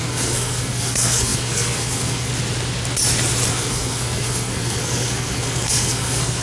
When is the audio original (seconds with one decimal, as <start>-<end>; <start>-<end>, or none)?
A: 2.3-3.5